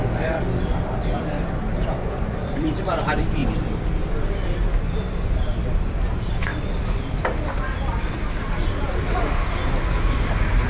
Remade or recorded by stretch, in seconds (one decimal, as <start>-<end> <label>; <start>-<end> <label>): 0.0-0.8 recorded; 0.8-3.4 remade; 3.4-4.0 recorded; 4.0-5.6 remade; 5.6-6.1 recorded; 6.1-6.5 remade; 6.5-8.1 recorded; 8.1-10.7 remade